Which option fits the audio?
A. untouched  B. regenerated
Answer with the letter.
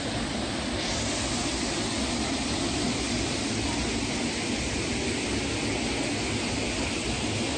A